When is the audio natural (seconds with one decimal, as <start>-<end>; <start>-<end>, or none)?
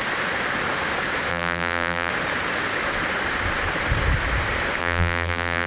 0.0-1.3; 2.1-4.8